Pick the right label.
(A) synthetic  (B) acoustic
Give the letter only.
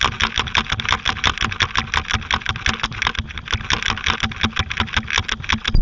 B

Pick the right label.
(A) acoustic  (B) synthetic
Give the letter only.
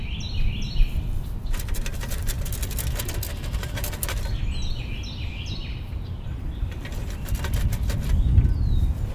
A